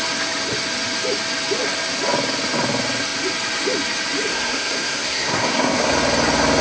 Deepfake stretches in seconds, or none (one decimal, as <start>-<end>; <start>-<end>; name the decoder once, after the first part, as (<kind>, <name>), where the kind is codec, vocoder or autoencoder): 4.3-5.9 (codec, SNAC)